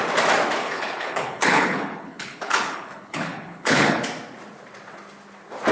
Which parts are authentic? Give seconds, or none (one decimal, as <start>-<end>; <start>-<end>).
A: 0.0-0.6; 4.0-5.7